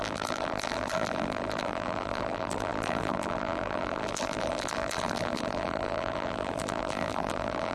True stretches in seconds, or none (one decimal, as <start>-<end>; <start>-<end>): none